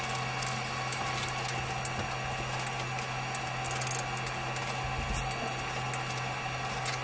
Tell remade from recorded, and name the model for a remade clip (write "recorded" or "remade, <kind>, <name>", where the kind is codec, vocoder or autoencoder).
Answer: recorded